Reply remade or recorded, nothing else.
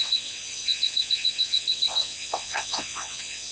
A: remade